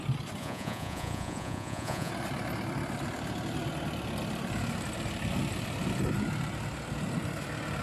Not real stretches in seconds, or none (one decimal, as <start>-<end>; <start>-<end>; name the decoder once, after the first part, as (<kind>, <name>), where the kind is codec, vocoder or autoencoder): 0.4-2.1 (vocoder, Vocos)